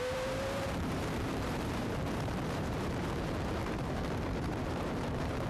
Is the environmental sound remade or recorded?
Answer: remade